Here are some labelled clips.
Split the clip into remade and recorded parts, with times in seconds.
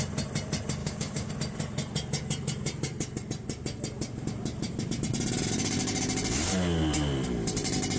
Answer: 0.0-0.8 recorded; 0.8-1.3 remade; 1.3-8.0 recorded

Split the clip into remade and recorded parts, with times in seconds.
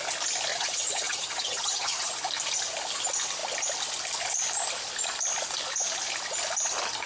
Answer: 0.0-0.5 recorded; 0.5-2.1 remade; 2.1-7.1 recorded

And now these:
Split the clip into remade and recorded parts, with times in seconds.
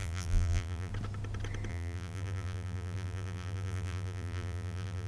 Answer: 0.0-0.9 remade; 0.9-1.7 recorded; 1.7-5.1 remade